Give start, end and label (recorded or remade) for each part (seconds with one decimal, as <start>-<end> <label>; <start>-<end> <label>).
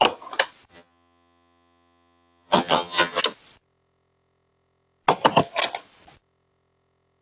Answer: 0.0-0.7 recorded; 0.7-3.2 remade; 3.2-7.2 recorded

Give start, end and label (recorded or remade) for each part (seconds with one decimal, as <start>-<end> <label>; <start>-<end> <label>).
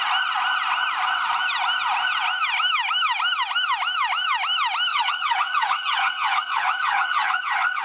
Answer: 0.0-4.9 recorded; 4.9-7.8 remade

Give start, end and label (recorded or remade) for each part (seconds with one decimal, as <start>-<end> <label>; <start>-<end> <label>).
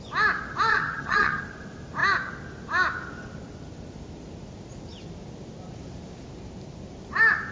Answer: 0.0-0.7 recorded; 0.7-1.4 remade; 1.4-7.5 recorded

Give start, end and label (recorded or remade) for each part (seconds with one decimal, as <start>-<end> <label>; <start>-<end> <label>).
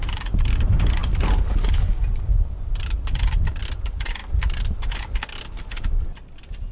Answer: 0.0-6.7 recorded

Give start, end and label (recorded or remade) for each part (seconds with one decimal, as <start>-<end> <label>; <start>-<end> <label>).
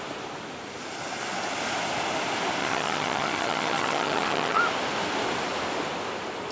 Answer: 0.0-2.6 recorded; 2.6-4.6 remade; 4.6-6.5 recorded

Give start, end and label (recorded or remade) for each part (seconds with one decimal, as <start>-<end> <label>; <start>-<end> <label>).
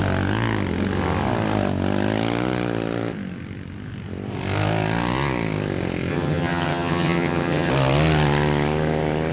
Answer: 0.0-6.1 recorded; 6.1-7.7 remade; 7.7-9.3 recorded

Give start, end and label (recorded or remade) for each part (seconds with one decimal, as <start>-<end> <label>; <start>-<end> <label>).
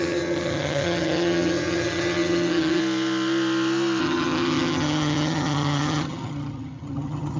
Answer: 0.0-2.8 remade; 2.8-4.0 recorded; 4.0-7.4 remade